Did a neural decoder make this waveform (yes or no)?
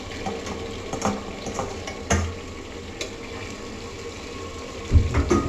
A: no